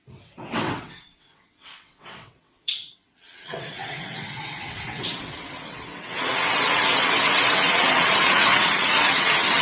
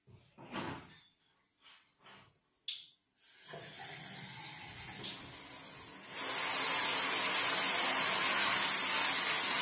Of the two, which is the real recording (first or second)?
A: second